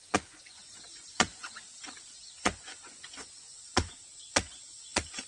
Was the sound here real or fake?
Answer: fake